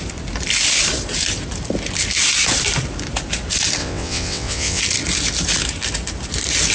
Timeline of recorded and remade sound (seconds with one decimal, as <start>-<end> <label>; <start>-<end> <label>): 0.0-3.8 recorded; 3.8-4.8 remade; 4.8-6.7 recorded